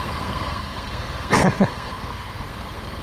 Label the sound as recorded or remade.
remade